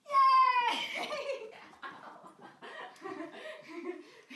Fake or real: fake